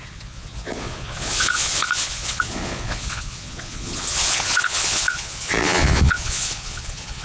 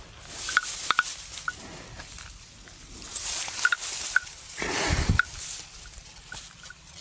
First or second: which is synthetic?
first